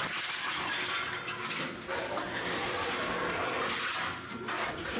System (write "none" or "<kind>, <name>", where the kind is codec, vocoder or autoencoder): none